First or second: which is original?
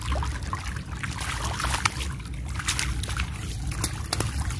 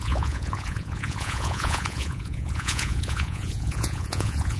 first